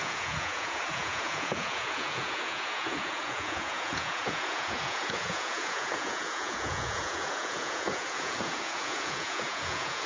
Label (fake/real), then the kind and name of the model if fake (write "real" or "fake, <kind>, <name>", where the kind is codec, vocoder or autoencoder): fake, vocoder, Vocos